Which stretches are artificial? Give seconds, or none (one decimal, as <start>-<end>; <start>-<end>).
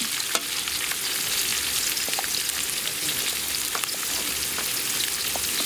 none